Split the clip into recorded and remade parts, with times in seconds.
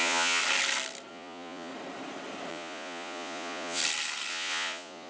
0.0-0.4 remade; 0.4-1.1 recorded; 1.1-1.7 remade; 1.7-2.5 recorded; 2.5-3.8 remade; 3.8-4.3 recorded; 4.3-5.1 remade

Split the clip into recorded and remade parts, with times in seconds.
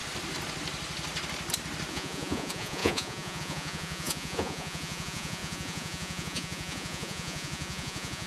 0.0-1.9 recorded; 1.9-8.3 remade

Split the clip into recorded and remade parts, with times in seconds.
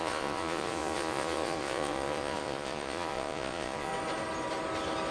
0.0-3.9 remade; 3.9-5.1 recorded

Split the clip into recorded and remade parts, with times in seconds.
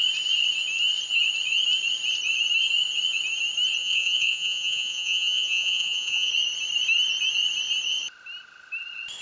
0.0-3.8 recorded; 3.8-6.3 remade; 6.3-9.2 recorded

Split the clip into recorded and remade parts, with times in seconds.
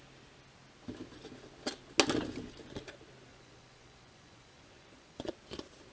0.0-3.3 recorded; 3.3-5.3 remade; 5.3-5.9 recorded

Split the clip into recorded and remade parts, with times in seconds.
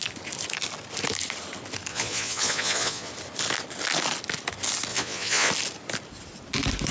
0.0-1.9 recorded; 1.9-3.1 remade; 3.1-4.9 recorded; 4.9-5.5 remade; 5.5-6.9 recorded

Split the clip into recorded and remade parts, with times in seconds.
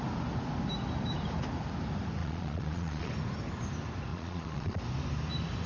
0.0-2.2 recorded; 2.2-3.1 remade; 3.1-4.1 recorded; 4.1-4.8 remade; 4.8-5.7 recorded